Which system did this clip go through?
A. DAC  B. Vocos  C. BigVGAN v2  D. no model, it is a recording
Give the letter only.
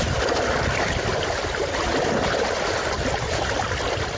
D